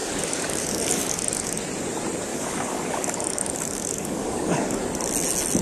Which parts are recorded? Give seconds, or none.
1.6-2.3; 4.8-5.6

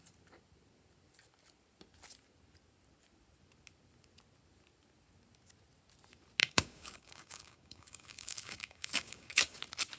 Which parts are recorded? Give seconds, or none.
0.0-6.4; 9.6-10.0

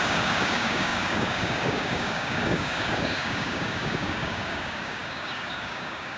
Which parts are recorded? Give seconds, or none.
none

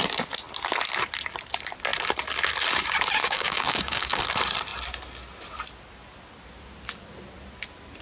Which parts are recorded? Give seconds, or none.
0.0-3.2; 4.2-8.0